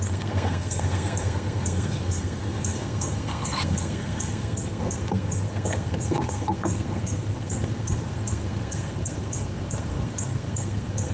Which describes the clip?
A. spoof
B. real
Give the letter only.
A